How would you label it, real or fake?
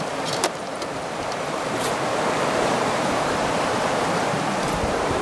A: fake